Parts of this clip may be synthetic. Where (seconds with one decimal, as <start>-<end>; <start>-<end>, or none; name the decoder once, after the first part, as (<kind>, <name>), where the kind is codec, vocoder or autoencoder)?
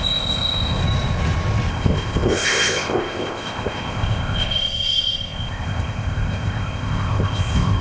0.0-0.8 (codec, ZipCodec); 1.7-7.8